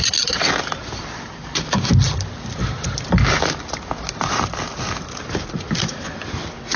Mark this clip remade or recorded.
recorded